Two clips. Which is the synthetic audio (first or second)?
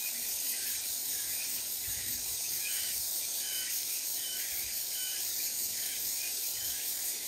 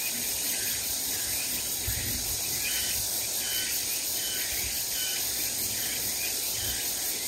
first